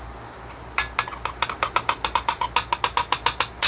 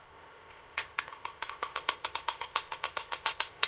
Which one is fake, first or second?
second